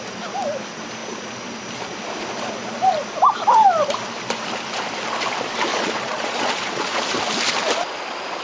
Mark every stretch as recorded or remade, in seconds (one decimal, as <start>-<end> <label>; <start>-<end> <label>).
0.0-5.7 recorded; 5.7-7.0 remade; 7.0-8.4 recorded